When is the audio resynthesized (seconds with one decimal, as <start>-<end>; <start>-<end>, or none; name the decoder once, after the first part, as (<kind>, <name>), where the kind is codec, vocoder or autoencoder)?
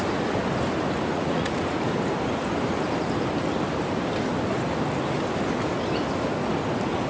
1.1-1.8 (vocoder, Vocos)